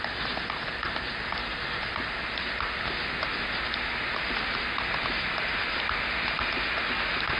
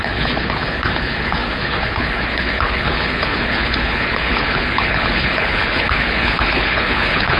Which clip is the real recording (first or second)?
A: first